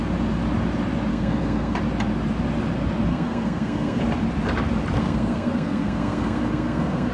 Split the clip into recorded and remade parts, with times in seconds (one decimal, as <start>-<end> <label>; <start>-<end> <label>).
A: 0.0-1.1 recorded; 1.1-1.8 remade; 1.8-3.1 recorded; 3.1-4.0 remade; 4.0-5.0 recorded; 5.0-7.1 remade